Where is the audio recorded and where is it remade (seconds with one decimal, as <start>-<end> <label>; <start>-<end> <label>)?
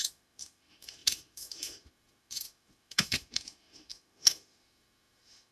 0.0-5.5 remade